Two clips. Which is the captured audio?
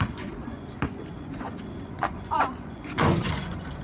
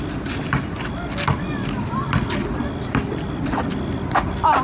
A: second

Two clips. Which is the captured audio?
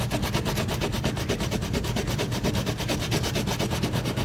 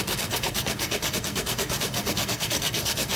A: first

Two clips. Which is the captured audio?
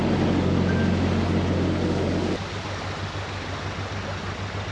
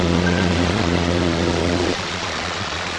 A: first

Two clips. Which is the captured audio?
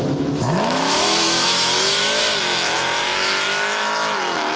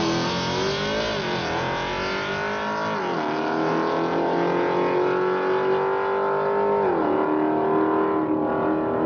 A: second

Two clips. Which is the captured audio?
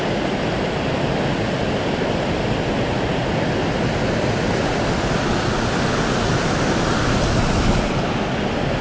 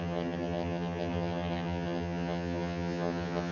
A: first